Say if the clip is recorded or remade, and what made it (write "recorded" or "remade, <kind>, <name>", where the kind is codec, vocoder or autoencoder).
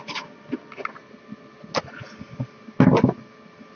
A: recorded